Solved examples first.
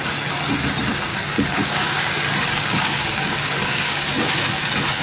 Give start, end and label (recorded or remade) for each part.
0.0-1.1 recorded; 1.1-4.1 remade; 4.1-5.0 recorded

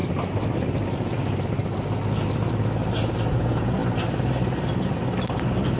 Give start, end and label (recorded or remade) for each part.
0.0-3.3 recorded; 3.3-3.8 remade; 3.8-5.8 recorded